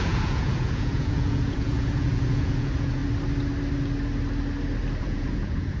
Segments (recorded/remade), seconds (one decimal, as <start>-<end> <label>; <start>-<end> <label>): 0.0-3.0 remade; 3.0-5.0 recorded; 5.0-5.8 remade